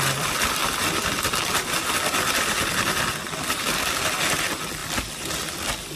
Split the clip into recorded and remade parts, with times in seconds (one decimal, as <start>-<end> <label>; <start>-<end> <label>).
0.0-4.8 recorded; 4.8-5.3 remade; 5.3-6.0 recorded